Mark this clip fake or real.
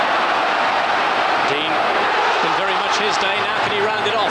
real